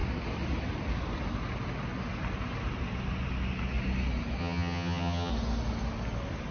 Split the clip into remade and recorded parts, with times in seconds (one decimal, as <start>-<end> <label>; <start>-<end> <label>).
0.0-4.4 recorded; 4.4-5.3 remade; 5.3-6.5 recorded